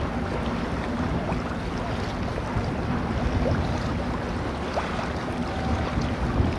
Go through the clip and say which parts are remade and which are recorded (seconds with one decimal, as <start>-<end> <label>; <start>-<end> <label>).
0.0-6.6 recorded